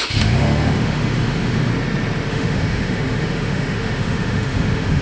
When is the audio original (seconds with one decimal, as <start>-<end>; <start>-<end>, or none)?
1.7-2.3